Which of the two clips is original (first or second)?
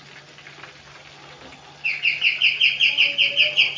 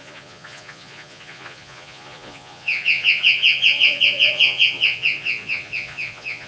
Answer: first